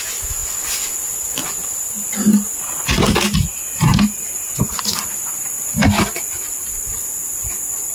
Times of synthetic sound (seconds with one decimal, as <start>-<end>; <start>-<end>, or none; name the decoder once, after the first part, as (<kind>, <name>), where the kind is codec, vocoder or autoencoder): 3.9-4.8 (vocoder, BigVGAN v2)